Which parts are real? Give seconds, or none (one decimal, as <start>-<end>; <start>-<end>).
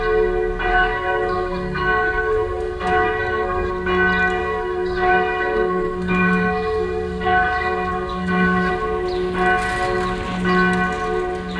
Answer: 0.0-0.7; 3.7-4.4; 8.7-11.6